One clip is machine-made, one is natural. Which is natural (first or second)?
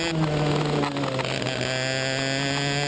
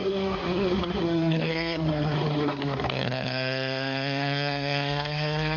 first